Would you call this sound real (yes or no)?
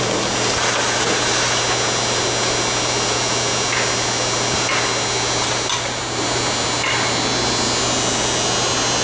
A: yes